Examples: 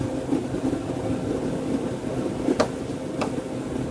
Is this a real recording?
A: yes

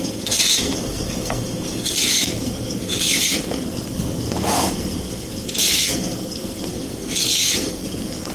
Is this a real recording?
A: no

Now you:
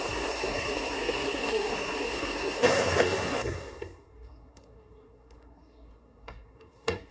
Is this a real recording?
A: no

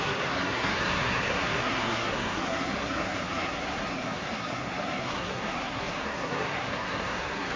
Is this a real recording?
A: no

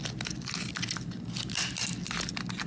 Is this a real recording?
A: yes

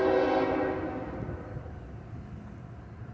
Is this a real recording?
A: yes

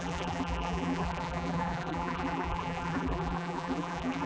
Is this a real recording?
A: no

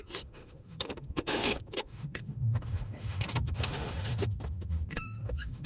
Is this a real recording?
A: no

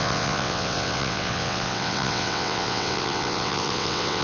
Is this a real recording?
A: no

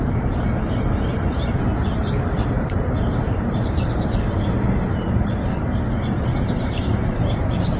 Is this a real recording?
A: no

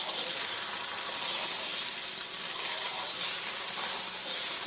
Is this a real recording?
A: no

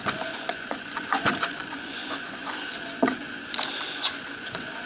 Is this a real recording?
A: no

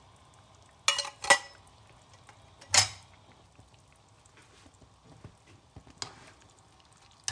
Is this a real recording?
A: yes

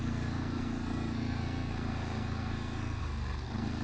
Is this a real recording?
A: no